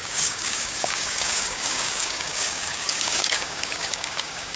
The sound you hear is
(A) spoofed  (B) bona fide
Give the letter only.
A